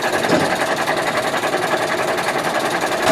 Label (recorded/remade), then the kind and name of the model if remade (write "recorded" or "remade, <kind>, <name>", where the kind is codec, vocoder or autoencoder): recorded